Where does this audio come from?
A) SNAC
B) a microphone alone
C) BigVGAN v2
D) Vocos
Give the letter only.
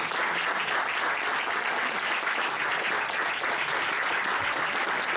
B